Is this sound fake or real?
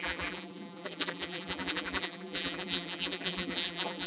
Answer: fake